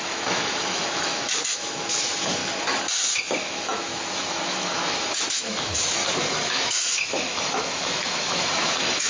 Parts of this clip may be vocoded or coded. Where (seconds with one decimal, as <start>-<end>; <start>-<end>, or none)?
0.0-2.4; 3.4-6.0; 6.5-9.1